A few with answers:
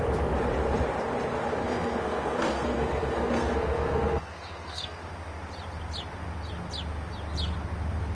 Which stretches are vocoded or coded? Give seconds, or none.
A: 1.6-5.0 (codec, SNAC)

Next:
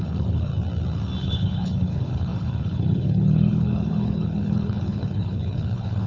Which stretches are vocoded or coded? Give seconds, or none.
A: 0.0-0.5 (codec, HILCodec); 1.2-6.1

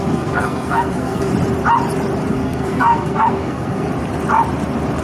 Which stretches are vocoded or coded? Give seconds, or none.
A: 0.0-1.3 (codec, SNAC); 2.3-3.9

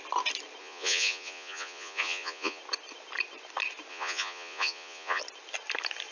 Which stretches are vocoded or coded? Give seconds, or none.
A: 0.6-2.6 (vocoder, Vocos); 3.9-5.2

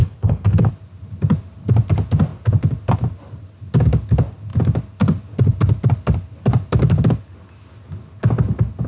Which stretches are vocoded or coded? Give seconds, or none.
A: 0.0-0.7 (codec, SNAC)